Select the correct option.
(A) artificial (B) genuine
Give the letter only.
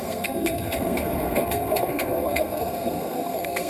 A